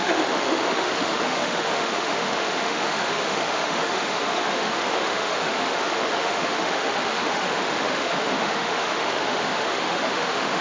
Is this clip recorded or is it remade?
remade